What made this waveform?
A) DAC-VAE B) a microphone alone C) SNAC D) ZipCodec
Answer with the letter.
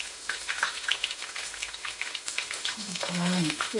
A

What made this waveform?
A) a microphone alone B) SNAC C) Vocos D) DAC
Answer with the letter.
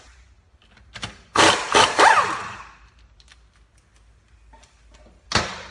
A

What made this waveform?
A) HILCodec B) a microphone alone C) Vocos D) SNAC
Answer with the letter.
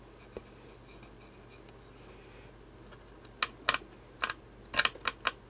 B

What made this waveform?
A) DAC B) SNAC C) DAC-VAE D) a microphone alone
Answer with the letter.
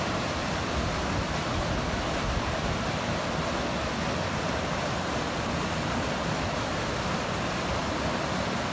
D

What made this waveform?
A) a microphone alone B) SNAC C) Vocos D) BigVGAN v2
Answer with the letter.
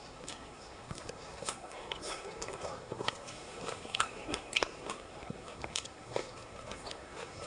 B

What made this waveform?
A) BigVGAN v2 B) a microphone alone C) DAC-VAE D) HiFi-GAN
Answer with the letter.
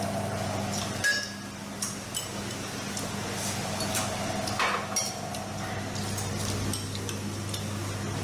B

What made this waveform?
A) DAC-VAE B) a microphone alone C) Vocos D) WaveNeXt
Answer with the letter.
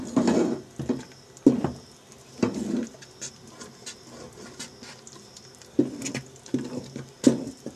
B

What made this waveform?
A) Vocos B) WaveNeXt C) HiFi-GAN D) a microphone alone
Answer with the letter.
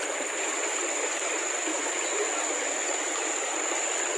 D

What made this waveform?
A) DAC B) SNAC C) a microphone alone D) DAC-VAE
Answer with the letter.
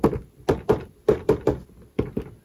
C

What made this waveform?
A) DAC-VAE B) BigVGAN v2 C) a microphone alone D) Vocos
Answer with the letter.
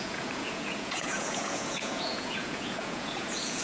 D